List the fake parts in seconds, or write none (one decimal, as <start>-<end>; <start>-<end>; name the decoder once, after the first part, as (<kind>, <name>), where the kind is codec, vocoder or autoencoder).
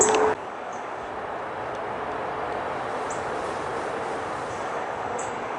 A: 0.0-1.1 (codec, DAC); 4.5-5.6